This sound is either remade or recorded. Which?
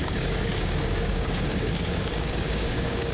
remade